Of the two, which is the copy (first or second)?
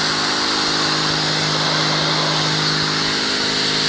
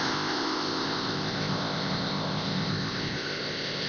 second